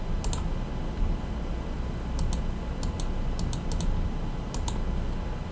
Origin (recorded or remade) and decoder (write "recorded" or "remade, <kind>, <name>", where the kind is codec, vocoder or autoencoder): recorded